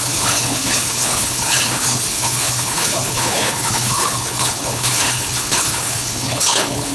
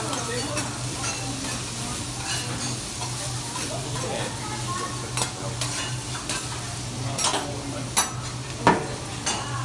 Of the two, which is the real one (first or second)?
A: second